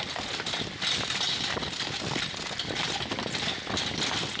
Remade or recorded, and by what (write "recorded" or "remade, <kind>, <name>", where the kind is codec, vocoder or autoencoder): recorded